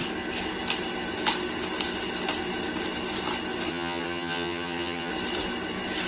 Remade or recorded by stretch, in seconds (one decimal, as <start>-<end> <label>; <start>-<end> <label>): 0.0-3.7 recorded; 3.7-5.1 remade; 5.1-6.1 recorded